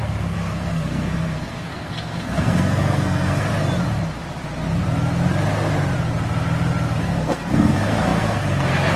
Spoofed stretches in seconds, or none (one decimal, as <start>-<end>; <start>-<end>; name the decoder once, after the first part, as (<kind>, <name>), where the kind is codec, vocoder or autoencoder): 0.0-3.5 (codec, SNAC); 7.0-9.0